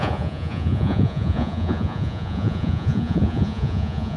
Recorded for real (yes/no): no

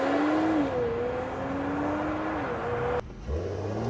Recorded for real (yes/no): yes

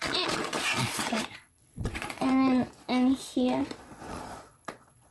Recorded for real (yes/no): no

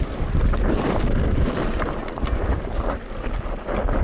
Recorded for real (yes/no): yes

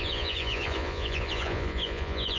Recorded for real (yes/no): no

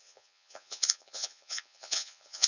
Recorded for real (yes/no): no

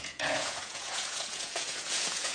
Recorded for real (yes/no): no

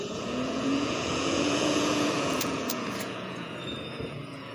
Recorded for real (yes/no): no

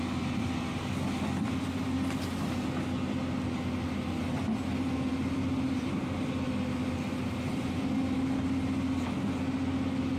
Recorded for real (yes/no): yes